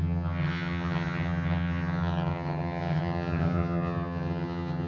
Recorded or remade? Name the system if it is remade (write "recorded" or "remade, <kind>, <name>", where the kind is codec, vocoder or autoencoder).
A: remade, vocoder, HiFi-GAN